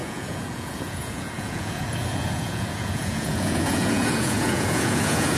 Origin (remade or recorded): remade